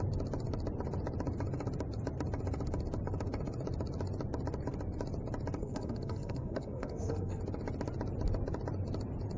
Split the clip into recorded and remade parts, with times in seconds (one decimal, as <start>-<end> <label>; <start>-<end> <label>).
0.0-5.6 recorded; 5.6-7.4 remade; 7.4-9.4 recorded